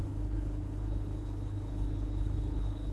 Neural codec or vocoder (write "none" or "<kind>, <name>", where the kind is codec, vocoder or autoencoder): codec, HILCodec